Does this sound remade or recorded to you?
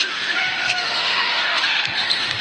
remade